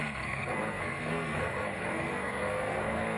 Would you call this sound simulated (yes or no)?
yes